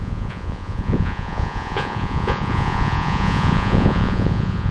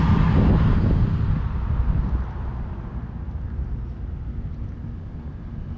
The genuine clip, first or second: second